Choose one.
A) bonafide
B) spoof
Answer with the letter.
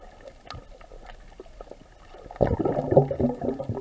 A